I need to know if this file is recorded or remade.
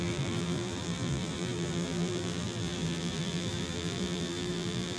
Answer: remade